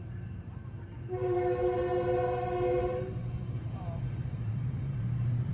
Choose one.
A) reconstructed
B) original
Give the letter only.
A